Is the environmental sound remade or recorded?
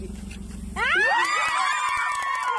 recorded